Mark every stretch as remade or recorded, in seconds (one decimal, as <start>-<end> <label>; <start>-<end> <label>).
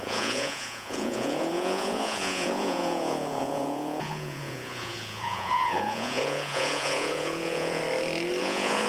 0.0-7.8 remade; 7.8-8.4 recorded; 8.4-8.9 remade